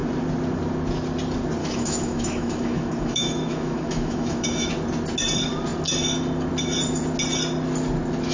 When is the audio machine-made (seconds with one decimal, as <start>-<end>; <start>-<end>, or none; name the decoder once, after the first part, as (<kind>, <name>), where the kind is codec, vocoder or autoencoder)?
1.6-4.7 (autoencoder, DAC-VAE)